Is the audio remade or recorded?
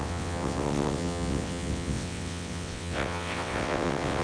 remade